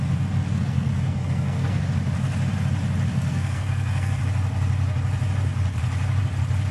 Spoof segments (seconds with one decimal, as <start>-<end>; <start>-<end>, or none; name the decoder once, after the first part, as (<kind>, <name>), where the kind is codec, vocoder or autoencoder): 0.5-1.8 (codec, SNAC); 3.1-4.2